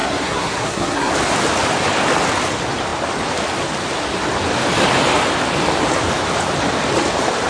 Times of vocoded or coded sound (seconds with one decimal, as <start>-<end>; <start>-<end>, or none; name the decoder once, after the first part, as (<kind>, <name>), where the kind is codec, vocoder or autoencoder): 0.0-1.1 (codec, SNAC)